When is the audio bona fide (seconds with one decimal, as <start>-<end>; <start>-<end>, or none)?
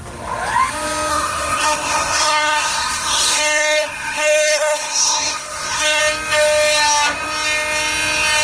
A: 0.0-1.1; 6.0-8.4